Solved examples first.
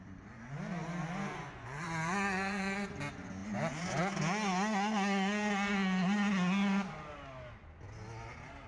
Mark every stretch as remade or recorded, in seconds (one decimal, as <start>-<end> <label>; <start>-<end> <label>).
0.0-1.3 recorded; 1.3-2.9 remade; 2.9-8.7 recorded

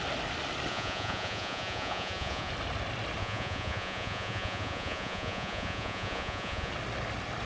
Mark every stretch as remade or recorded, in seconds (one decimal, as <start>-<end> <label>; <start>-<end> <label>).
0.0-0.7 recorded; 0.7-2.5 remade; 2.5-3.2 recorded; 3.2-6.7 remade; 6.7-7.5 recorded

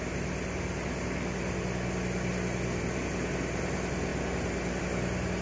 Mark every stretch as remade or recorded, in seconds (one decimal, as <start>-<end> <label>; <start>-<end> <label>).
0.0-5.4 recorded

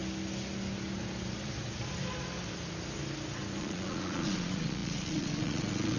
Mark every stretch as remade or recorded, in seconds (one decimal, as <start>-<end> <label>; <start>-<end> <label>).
0.0-3.6 recorded; 3.6-6.0 remade